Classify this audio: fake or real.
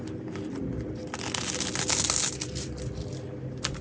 real